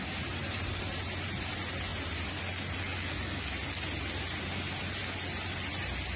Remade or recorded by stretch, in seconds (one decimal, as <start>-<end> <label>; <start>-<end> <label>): 0.0-6.2 recorded